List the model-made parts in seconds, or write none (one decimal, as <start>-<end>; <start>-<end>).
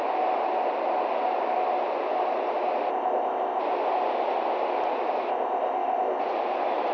2.9-3.6; 5.3-6.2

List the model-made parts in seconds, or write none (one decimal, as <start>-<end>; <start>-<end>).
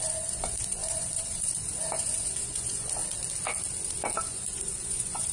0.0-3.0; 4.2-5.3